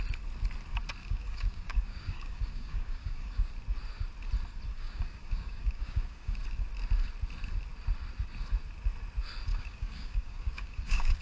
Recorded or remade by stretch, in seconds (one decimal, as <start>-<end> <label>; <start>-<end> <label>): 0.0-1.0 recorded; 1.0-3.5 remade; 3.5-4.7 recorded; 4.7-6.4 remade; 6.4-9.5 recorded; 9.5-11.2 remade